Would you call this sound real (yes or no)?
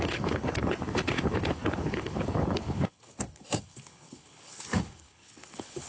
no